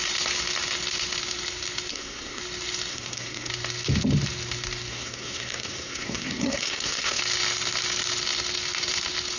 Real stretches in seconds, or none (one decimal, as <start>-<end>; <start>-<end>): 0.0-1.9; 2.4-2.9; 3.5-4.9; 7.2-9.4